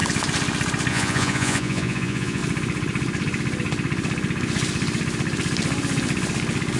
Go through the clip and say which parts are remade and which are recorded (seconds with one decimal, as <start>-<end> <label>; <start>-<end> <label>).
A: 0.0-0.9 recorded; 0.9-2.4 remade; 2.4-6.8 recorded